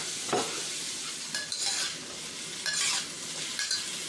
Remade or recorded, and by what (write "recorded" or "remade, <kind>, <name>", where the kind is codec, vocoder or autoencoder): recorded